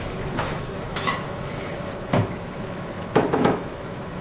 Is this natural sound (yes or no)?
no